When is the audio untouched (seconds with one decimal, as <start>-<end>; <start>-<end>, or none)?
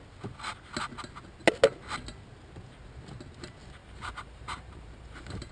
0.0-3.8